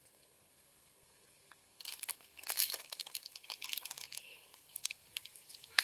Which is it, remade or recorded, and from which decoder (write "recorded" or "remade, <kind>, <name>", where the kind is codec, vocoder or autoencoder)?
remade, codec, SNAC